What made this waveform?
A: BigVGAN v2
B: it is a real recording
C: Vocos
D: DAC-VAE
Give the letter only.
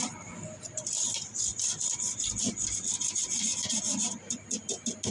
B